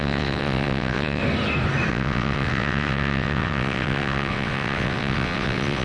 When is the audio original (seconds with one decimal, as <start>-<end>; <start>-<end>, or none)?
1.2-1.9